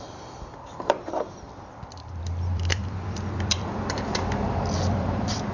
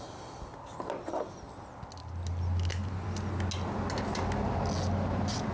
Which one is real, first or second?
second